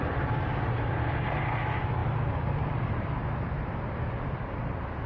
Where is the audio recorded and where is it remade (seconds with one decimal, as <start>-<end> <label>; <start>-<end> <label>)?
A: 0.0-2.0 recorded; 2.0-5.1 remade